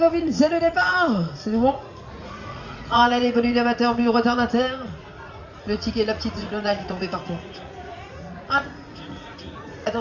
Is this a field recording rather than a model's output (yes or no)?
no